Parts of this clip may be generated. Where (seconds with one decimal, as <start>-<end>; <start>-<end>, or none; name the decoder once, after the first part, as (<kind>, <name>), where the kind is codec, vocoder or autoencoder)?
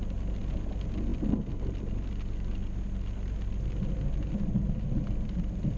none